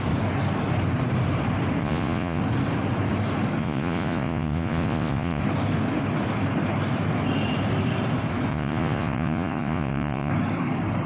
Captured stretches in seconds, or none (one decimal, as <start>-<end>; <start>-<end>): 0.0-1.8; 2.4-3.6; 5.4-8.5; 10.3-11.1